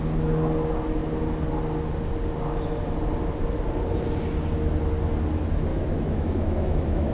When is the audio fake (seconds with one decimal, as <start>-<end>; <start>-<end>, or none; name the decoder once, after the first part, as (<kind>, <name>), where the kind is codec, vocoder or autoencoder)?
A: 5.7-7.1 (autoencoder, DAC-VAE)